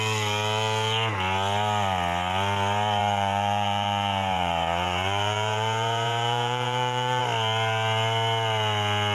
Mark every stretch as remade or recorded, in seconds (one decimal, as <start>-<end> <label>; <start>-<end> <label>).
0.0-3.0 recorded; 3.0-7.2 remade; 7.2-9.1 recorded